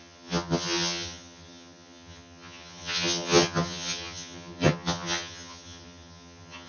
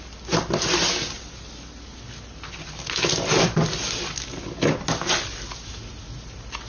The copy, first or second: first